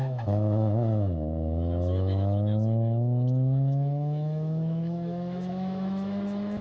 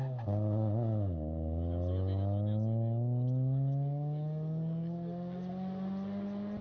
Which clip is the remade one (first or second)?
first